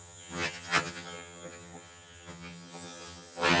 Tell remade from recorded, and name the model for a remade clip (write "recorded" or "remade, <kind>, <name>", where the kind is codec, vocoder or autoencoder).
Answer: remade, vocoder, HiFi-GAN